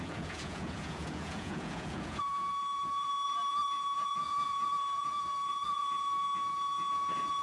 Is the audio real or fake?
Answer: fake